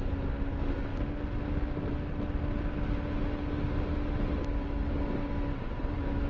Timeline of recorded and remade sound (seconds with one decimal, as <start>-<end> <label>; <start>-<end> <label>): 0.0-6.3 recorded